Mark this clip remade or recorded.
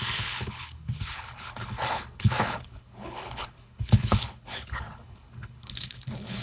remade